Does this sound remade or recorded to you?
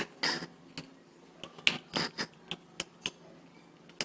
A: recorded